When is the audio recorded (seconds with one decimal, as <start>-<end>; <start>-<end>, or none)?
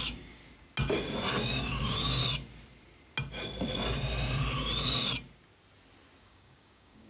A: 0.4-1.6; 2.2-6.2